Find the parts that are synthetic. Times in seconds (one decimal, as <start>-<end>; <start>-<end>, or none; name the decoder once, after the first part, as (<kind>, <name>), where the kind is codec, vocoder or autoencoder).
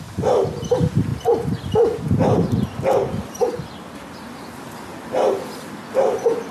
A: 1.1-1.6 (vocoder, BigVGAN v2)